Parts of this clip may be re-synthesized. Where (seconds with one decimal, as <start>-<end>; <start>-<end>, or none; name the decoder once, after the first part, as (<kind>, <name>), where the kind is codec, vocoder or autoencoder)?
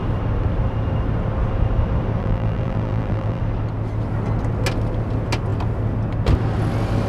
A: 2.2-3.4 (vocoder, BigVGAN v2)